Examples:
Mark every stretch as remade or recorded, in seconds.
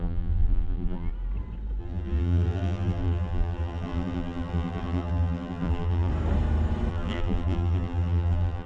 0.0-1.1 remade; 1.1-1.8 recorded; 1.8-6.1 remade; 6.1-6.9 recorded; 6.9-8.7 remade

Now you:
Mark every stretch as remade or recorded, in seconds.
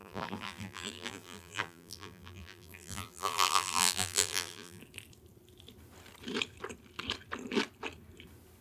0.0-4.8 remade; 4.8-8.6 recorded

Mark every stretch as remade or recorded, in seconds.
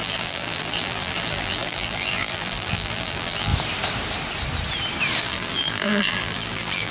0.0-3.5 remade; 3.5-5.2 recorded; 5.2-6.9 remade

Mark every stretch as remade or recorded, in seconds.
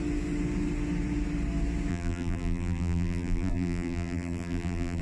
0.0-1.9 recorded; 1.9-5.0 remade